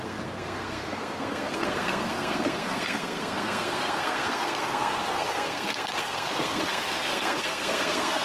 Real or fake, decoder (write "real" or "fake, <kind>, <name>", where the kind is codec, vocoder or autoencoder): fake, codec, SNAC